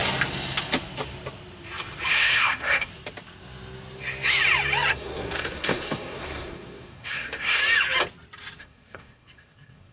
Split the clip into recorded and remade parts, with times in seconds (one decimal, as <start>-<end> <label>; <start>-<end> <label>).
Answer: 0.0-2.1 recorded; 2.1-2.9 remade; 2.9-4.9 recorded; 4.9-7.6 remade; 7.6-8.6 recorded; 8.6-9.9 remade